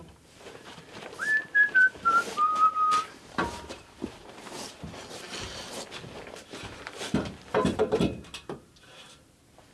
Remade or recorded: remade